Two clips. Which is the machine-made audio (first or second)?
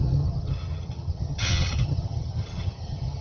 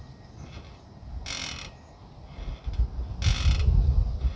first